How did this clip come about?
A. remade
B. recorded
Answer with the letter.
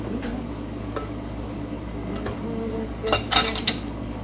A